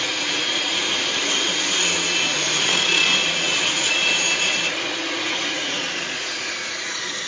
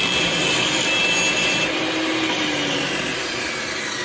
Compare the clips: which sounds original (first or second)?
second